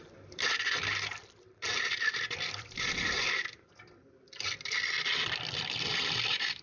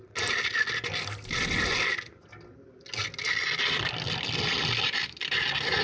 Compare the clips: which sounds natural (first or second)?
second